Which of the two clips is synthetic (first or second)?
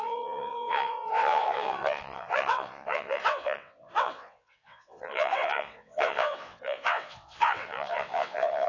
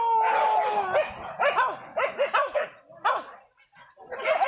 first